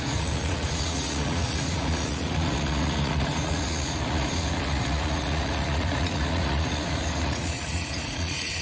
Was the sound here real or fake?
fake